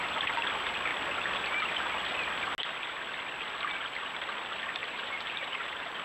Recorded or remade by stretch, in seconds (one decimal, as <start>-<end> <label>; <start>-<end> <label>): 0.0-4.8 recorded; 4.8-6.0 remade